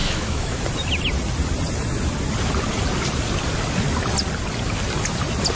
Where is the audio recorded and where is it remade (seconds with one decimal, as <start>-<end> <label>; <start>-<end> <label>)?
0.0-0.6 remade; 0.6-5.6 recorded